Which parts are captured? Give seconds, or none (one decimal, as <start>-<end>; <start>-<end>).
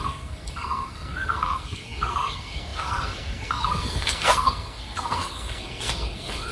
none